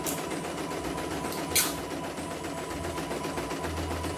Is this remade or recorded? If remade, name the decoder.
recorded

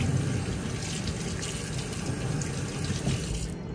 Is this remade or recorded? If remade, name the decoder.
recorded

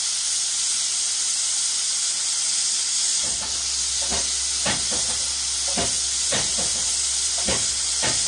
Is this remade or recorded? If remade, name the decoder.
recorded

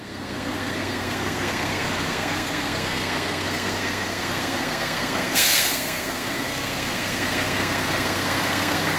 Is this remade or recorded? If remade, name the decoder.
remade, codec, SNAC